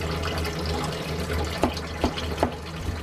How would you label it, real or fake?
real